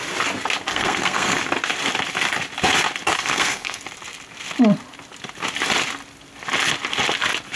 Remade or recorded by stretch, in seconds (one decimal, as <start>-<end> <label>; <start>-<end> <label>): 0.0-0.7 recorded; 0.7-1.4 remade; 1.4-3.1 recorded; 3.1-3.8 remade; 3.8-7.6 recorded